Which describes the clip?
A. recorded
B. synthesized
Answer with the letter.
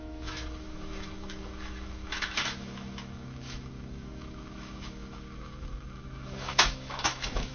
B